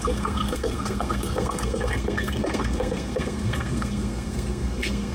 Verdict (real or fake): fake